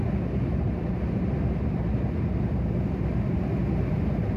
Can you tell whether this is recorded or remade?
recorded